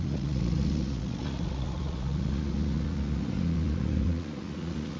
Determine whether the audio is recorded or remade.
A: remade